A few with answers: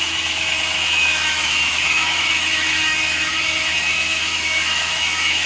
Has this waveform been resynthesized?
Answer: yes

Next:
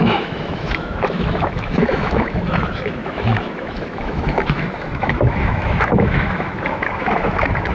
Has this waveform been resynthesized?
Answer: yes